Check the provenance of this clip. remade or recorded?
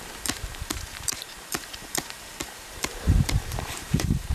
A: remade